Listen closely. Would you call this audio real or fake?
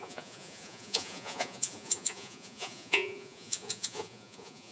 fake